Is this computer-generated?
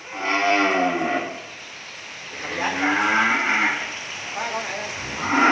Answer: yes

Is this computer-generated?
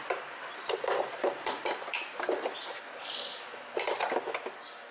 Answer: yes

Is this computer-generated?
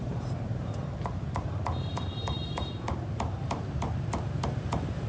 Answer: yes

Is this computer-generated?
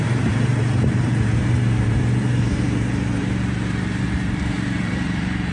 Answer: yes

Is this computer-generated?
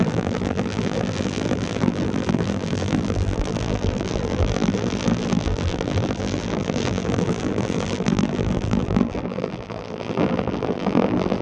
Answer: yes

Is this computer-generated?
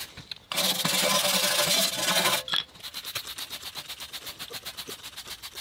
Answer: no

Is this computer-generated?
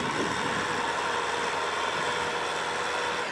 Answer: no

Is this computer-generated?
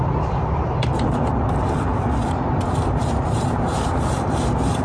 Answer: yes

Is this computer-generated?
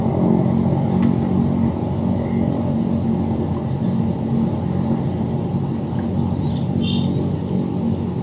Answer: no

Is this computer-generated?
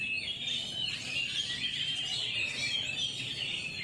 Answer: no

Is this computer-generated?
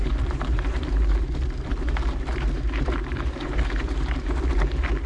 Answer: yes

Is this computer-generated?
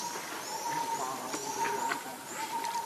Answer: yes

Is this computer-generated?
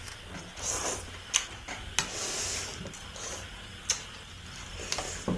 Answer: no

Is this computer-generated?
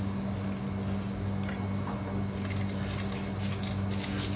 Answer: no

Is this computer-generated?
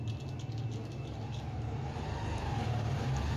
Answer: no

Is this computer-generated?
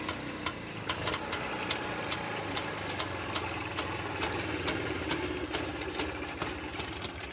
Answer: no